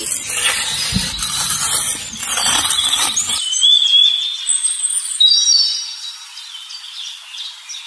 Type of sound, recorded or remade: recorded